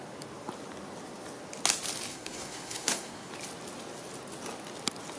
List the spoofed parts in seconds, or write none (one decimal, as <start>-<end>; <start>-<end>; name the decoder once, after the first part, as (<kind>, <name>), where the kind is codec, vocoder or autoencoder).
2.1-3.3 (codec, SNAC)